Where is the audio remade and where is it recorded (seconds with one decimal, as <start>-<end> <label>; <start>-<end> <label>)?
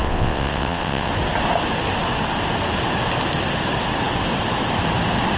0.0-1.1 remade; 1.1-5.4 recorded